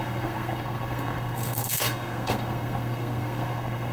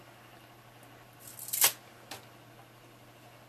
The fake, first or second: first